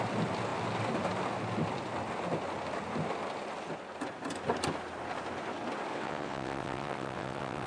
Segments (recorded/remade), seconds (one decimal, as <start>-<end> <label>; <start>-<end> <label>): 0.0-5.9 recorded; 5.9-7.7 remade